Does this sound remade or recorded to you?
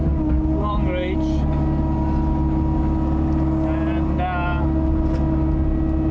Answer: recorded